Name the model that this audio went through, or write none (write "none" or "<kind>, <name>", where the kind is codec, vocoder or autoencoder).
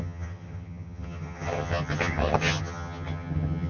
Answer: vocoder, HiFi-GAN